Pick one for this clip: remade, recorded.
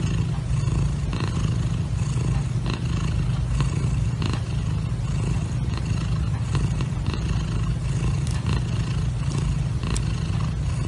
recorded